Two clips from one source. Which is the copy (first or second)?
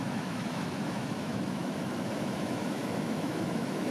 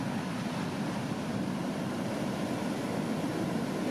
first